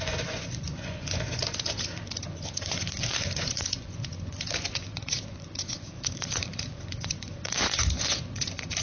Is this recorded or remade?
remade